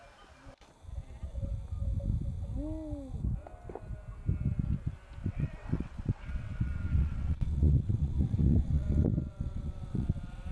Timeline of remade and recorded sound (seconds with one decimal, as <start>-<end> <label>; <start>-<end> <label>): 0.0-5.2 recorded; 5.2-10.5 remade

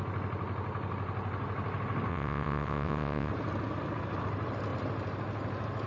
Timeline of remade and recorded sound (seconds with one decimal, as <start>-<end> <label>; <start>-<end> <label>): 0.0-2.1 recorded; 2.1-3.3 remade; 3.3-5.9 recorded

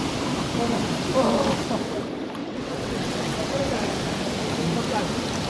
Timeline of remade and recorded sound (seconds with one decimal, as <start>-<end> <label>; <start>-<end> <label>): 0.0-2.4 recorded; 2.4-3.9 remade; 3.9-5.5 recorded

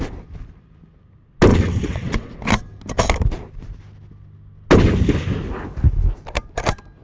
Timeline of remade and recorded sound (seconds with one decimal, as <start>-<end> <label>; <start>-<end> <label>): 0.0-1.5 recorded; 1.5-2.4 remade; 2.4-7.0 recorded

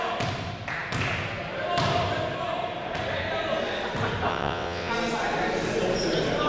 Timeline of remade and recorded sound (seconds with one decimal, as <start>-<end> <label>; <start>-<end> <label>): 0.0-4.3 recorded; 4.3-4.9 remade; 4.9-6.5 recorded